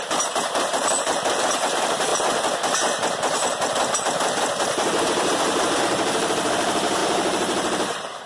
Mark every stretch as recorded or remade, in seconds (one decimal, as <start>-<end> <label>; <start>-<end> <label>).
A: 0.0-8.3 remade